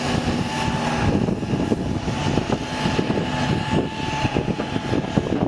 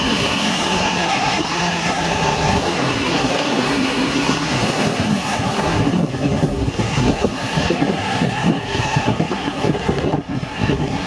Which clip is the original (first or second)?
first